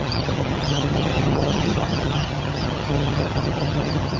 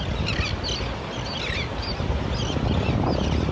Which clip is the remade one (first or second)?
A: first